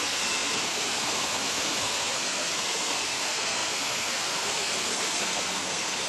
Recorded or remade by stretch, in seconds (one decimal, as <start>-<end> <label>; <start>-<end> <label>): 0.0-6.1 remade